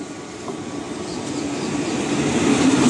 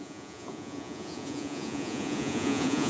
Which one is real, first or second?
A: first